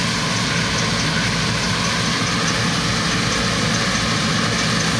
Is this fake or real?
real